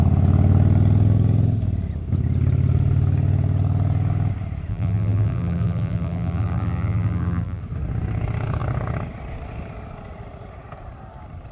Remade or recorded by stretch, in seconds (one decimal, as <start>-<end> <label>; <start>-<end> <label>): 0.0-4.7 recorded; 4.7-7.6 remade; 7.6-11.5 recorded